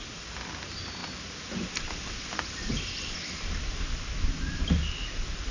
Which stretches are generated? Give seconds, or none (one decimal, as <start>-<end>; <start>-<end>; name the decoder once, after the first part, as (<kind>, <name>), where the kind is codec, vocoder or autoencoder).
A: none